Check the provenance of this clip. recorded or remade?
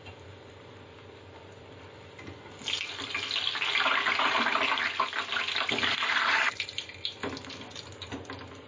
recorded